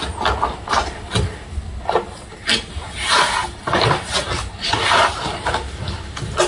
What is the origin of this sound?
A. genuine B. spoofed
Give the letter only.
A